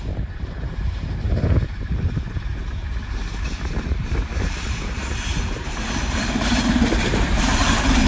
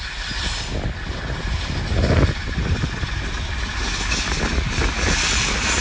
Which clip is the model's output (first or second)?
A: first